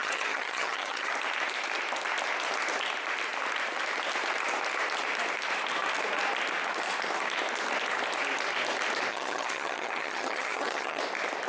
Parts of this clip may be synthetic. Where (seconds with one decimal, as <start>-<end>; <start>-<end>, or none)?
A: 0.0-1.1; 9.1-11.0